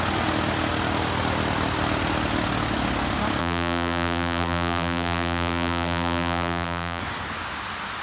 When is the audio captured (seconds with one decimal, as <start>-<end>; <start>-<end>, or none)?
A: 0.0-3.4; 7.0-8.0